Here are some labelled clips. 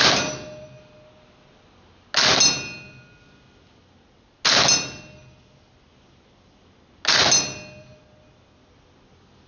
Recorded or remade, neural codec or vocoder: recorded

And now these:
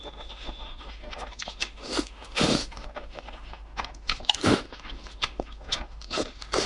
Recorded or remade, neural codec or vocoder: remade, autoencoder, DAC-VAE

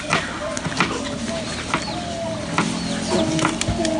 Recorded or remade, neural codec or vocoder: recorded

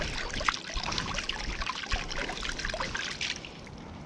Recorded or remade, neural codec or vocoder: recorded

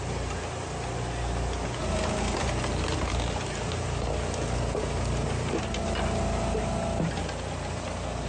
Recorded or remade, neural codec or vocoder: recorded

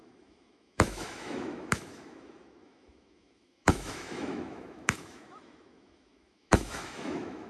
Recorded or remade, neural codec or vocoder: remade, autoencoder, DAC-VAE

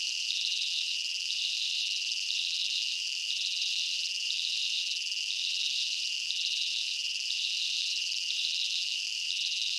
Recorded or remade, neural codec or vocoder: remade, vocoder, BigVGAN v2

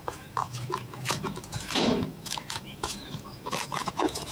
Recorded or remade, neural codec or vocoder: remade, autoencoder, DAC-VAE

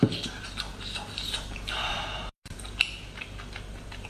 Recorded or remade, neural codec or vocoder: recorded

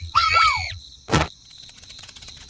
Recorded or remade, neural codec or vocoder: remade, vocoder, Vocos